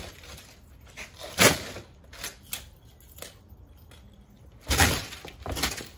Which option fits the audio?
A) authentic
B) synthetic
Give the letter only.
A